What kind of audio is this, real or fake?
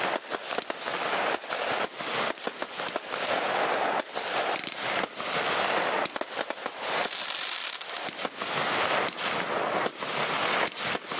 real